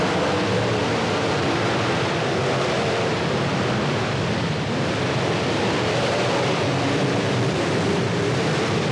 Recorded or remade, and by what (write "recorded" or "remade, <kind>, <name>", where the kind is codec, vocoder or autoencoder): remade, vocoder, BigVGAN v2